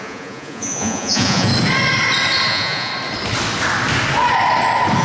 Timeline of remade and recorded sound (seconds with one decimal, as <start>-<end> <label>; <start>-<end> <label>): 0.0-1.5 remade; 1.5-2.5 recorded; 2.5-2.9 remade; 2.9-5.0 recorded